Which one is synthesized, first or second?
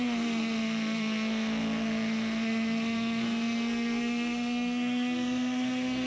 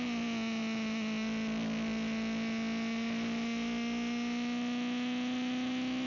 first